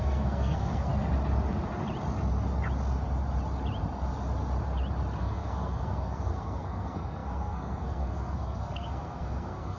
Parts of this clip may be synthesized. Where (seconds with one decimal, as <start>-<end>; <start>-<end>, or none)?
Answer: 0.0-0.9; 5.2-9.8